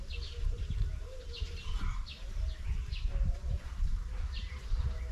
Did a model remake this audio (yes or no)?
yes